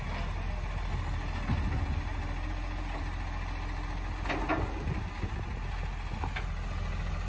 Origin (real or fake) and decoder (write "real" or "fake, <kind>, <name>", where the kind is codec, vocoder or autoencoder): real